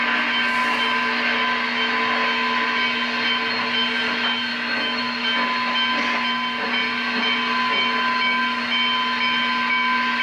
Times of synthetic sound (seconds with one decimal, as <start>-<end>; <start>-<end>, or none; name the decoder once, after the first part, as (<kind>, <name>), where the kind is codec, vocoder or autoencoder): 4.5-5.0 (autoencoder, DAC-VAE)